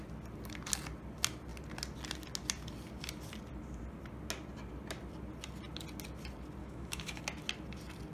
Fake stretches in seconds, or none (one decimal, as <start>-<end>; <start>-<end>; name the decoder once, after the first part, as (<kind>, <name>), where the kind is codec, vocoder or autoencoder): 6.6-7.2 (autoencoder, DAC-VAE)